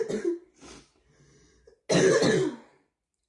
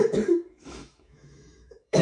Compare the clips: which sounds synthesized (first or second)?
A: second